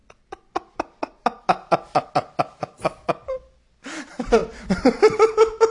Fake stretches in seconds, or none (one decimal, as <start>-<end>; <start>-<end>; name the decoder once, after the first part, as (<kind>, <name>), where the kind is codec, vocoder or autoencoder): none